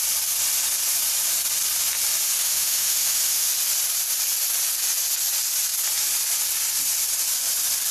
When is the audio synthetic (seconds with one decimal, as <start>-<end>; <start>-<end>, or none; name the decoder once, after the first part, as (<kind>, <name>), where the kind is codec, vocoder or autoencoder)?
2.4-3.5 (autoencoder, DAC-VAE)